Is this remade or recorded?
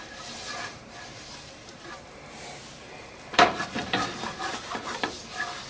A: remade